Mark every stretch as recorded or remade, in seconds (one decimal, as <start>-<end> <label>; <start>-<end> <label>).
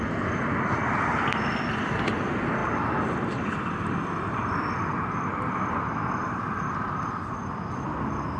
0.0-8.4 recorded